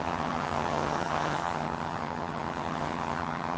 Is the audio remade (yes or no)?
yes